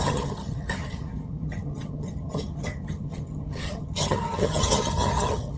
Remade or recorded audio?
remade